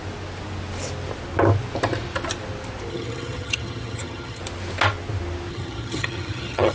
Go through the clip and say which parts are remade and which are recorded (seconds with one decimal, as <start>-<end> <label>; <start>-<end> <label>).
0.0-2.9 recorded; 2.9-4.4 remade; 4.4-5.5 recorded; 5.5-6.7 remade